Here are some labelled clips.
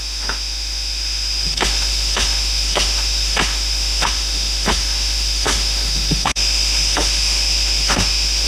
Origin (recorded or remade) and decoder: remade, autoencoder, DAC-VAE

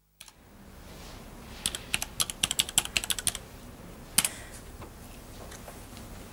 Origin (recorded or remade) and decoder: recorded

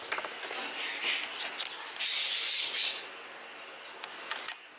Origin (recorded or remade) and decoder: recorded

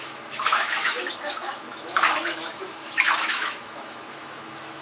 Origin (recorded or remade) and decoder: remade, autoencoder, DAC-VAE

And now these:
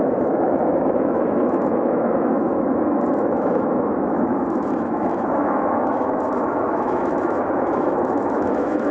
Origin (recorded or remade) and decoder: remade, autoencoder, DAC-VAE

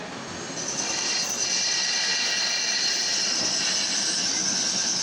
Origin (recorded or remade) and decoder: recorded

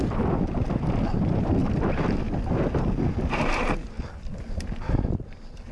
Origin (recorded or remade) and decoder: recorded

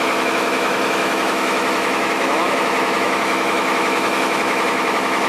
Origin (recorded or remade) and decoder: remade, autoencoder, DAC-VAE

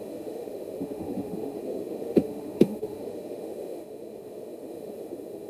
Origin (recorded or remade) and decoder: remade, autoencoder, DAC-VAE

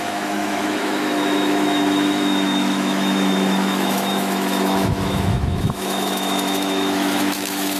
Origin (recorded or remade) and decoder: remade, autoencoder, DAC-VAE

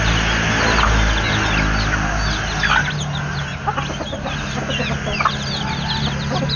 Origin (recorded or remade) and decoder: recorded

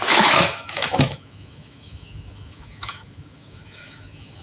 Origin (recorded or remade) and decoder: remade, autoencoder, DAC-VAE